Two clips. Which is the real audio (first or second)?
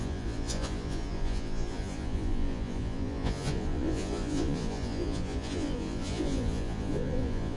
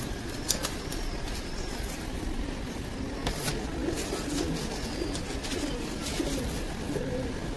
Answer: second